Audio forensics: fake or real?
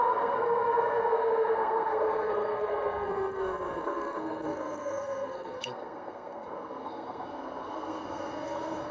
fake